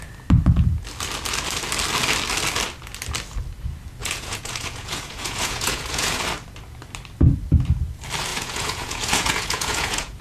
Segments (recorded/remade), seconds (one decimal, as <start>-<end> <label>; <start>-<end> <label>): 0.0-4.0 recorded; 4.0-6.2 remade; 6.2-8.3 recorded; 8.3-10.2 remade